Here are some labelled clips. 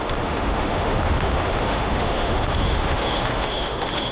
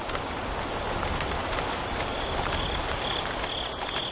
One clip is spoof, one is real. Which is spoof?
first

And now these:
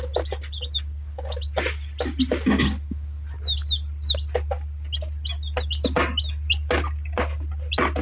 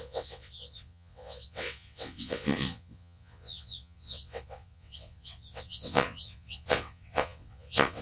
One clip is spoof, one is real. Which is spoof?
second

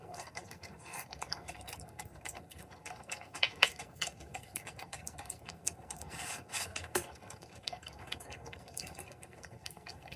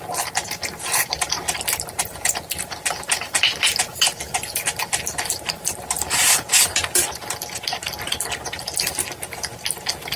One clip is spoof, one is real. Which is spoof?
first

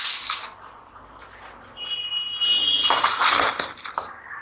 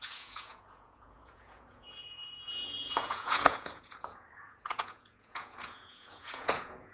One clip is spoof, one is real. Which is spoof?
second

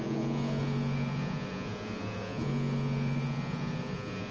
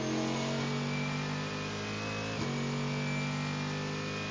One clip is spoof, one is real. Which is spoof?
first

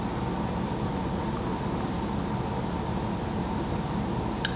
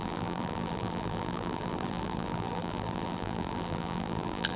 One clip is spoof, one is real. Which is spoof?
second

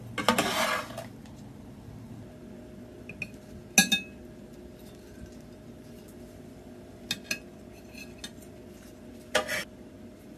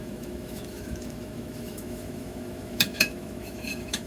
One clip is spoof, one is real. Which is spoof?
second